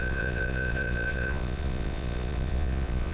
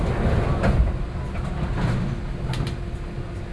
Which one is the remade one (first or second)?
first